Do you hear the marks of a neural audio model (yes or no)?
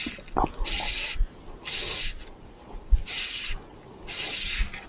no